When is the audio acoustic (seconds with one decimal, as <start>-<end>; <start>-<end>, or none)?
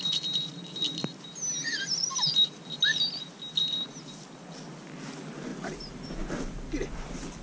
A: 0.0-5.5; 6.1-7.4